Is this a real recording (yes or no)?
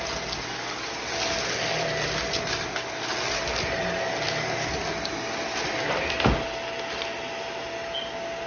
yes